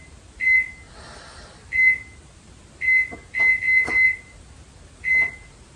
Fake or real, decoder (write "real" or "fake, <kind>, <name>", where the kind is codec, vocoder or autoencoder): real